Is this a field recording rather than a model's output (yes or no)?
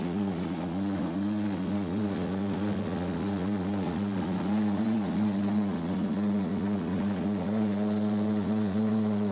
no